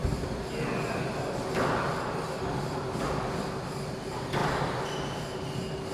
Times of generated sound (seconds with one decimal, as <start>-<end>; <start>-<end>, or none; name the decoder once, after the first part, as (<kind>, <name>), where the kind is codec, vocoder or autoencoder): none